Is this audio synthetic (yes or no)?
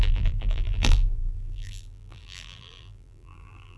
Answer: yes